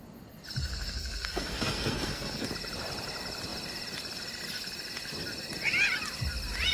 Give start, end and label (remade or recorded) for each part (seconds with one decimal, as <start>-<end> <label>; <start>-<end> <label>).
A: 0.0-0.6 recorded; 0.6-2.5 remade; 2.5-6.7 recorded